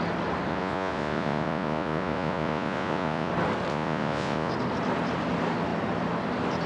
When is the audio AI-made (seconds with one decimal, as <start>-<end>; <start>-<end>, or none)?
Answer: 0.5-3.3; 3.7-4.5